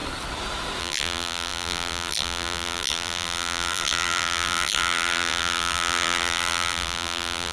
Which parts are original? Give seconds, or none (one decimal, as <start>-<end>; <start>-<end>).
0.0-0.8